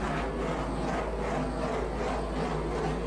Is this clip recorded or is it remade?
recorded